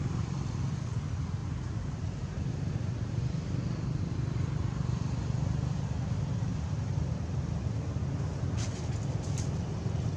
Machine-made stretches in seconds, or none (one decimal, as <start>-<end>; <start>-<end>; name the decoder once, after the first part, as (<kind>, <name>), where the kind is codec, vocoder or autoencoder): 1.4-3.4 (vocoder, BigVGAN v2); 6.5-7.2